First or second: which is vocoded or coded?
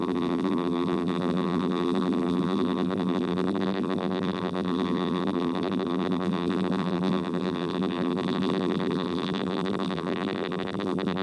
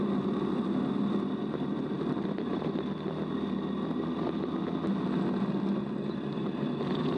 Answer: first